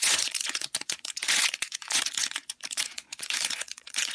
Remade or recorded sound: remade